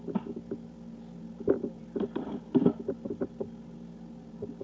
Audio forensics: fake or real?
real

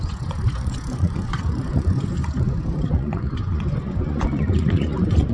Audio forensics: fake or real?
fake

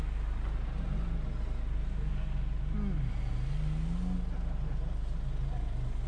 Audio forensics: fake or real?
real